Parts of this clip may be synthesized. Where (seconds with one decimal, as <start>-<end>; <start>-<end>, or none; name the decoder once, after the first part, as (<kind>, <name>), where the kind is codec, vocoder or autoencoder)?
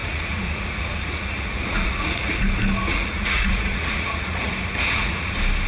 0.0-2.4 (vocoder, Vocos); 2.8-5.3